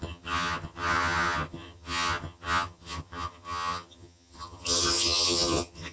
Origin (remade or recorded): remade